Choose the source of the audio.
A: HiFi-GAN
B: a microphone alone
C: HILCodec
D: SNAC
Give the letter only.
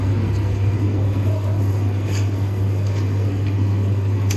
D